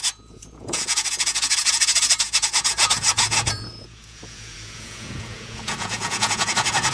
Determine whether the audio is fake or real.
fake